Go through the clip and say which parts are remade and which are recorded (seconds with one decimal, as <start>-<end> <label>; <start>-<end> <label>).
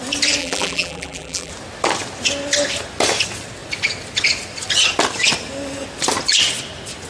0.0-0.4 recorded; 0.4-1.5 remade; 1.5-7.1 recorded